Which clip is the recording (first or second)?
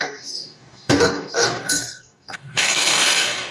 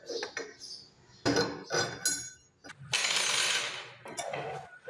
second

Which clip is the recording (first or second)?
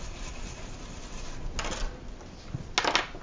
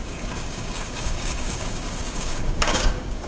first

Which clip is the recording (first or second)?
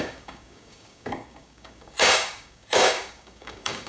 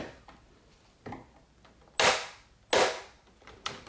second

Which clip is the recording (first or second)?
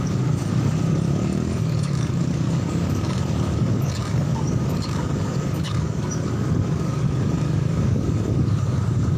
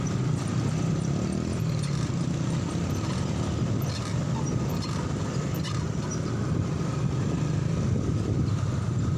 second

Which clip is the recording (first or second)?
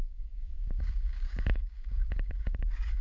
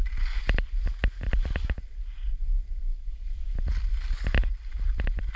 second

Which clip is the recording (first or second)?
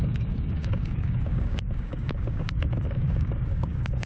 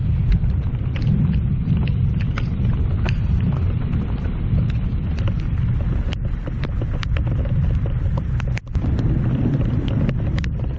second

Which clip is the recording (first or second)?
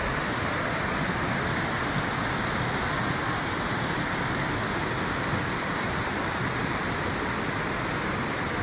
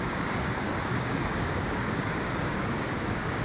first